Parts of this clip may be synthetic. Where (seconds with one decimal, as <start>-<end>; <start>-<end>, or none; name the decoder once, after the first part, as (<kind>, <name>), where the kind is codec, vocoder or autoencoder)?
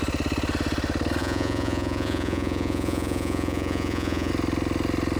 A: 1.2-4.3 (vocoder, Vocos)